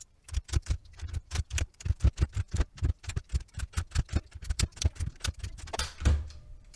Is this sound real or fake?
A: fake